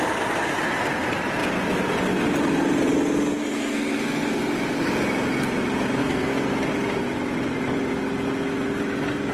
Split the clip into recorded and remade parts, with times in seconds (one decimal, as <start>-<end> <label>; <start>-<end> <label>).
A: 0.0-3.4 recorded; 3.4-4.4 remade; 4.4-6.0 recorded; 6.0-6.5 remade; 6.5-9.3 recorded